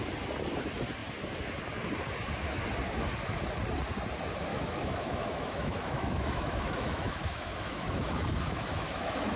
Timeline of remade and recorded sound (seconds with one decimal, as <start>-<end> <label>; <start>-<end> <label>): 0.0-4.5 recorded; 4.5-9.4 remade